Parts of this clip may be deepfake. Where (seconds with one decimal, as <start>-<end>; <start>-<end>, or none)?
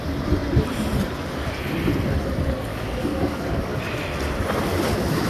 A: 2.7-3.8